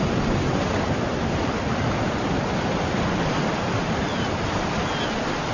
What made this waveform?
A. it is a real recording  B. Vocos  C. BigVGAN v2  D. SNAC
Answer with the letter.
A